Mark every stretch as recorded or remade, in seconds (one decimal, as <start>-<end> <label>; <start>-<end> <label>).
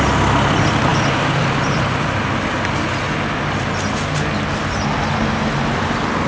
0.0-6.3 recorded